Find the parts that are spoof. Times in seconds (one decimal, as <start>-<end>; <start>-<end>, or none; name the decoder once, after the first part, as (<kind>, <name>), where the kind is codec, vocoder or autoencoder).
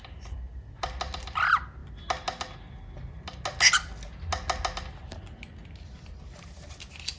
none